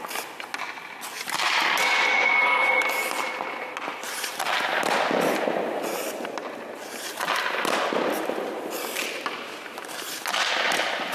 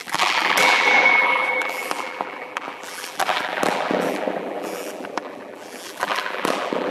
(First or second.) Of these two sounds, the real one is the first